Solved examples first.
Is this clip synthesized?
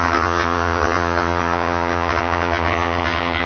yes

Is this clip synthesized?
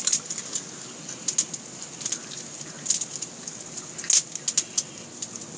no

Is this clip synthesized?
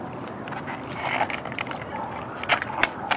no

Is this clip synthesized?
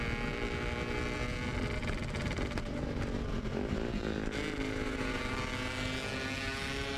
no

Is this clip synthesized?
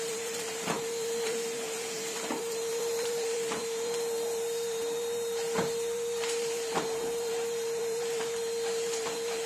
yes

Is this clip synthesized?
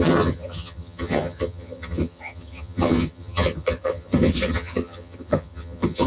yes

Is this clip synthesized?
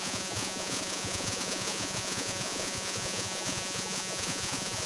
yes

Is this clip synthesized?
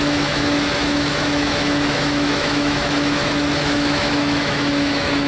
yes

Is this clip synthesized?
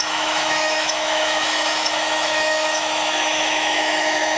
yes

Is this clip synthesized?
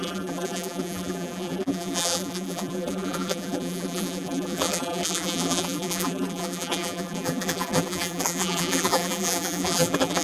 yes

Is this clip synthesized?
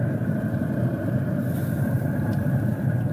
yes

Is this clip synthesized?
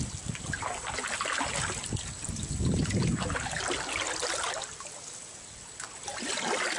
no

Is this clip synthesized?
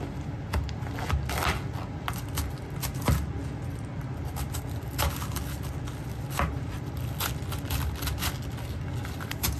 no